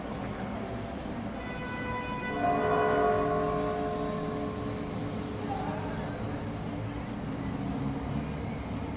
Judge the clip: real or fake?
real